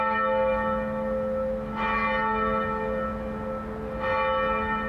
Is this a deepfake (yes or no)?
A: no